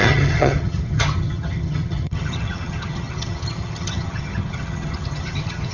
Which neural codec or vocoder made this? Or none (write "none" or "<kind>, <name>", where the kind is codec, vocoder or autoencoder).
vocoder, HiFi-GAN